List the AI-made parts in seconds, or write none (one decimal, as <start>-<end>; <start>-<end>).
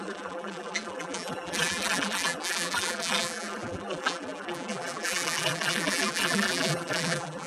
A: 0.0-7.5